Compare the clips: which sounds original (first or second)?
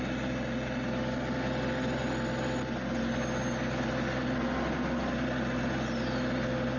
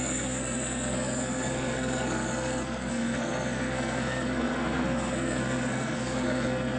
first